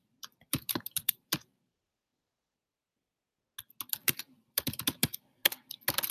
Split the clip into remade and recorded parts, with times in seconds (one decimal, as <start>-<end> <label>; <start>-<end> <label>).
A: 0.0-2.1 remade; 2.1-3.9 recorded; 3.9-5.4 remade; 5.4-6.1 recorded